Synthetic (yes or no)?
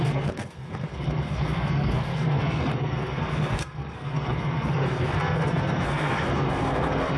yes